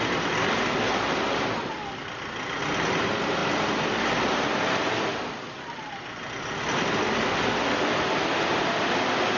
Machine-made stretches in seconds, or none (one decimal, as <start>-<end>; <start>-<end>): none